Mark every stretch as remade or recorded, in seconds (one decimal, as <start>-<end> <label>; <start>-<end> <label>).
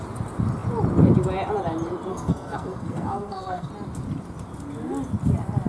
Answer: 0.0-2.1 recorded; 2.1-3.7 remade; 3.7-5.7 recorded